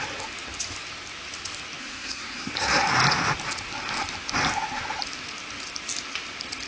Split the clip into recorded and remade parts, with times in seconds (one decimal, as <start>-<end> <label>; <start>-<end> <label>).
0.0-1.8 recorded; 1.8-2.5 remade; 2.5-6.7 recorded